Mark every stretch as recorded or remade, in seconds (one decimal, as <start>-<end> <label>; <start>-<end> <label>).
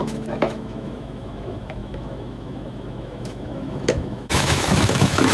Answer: 0.0-5.3 remade